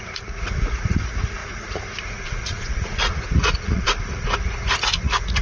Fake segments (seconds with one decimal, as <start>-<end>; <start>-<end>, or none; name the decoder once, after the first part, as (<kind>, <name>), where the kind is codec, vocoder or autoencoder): 0.0-5.4 (vocoder, Vocos)